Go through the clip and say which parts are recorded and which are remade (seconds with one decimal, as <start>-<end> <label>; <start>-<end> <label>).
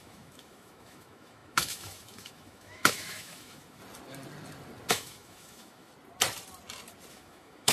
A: 0.0-3.8 remade; 3.8-4.9 recorded; 4.9-5.9 remade; 5.9-7.1 recorded; 7.1-7.7 remade